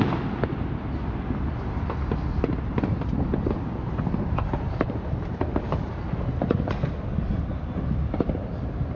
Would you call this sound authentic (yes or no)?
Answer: yes